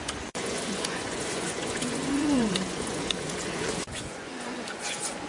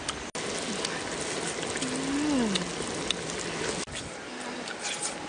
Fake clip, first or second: first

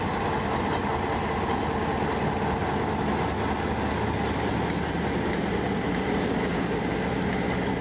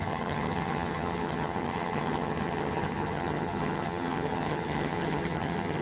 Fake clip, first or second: second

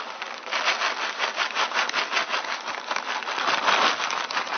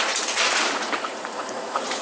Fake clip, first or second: second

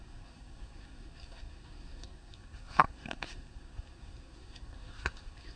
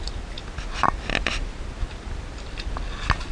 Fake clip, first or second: first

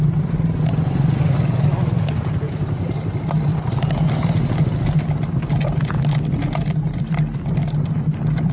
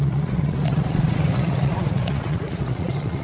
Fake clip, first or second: second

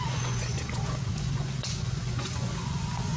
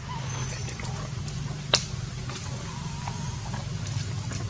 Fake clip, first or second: first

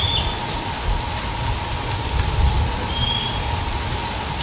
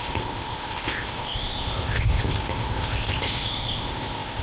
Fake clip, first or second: second